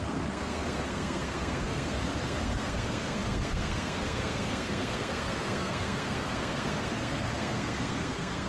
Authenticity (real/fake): fake